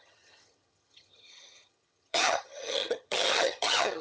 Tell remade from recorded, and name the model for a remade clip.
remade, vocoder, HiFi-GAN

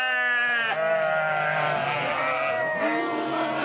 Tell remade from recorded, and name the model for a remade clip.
recorded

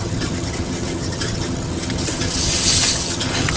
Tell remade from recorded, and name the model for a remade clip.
remade, vocoder, HiFi-GAN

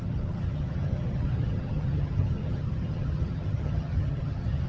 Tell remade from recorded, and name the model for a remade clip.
remade, vocoder, HiFi-GAN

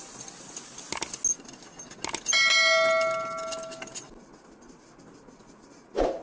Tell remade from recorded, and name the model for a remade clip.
recorded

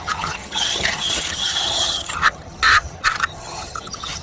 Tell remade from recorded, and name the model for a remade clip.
remade, vocoder, HiFi-GAN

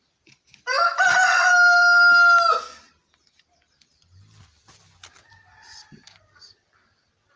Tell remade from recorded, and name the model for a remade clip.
recorded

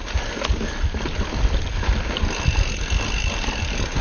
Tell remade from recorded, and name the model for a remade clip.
recorded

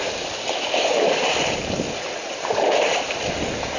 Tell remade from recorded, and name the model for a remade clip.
recorded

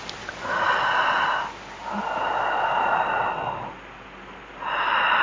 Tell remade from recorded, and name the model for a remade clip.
recorded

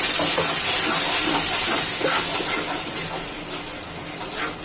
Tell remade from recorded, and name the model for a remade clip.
recorded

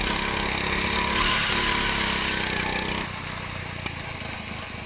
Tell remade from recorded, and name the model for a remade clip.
recorded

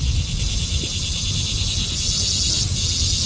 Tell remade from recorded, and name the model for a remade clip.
recorded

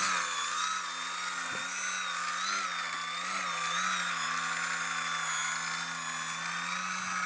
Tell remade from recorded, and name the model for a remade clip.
recorded